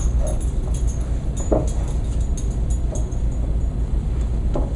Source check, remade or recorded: recorded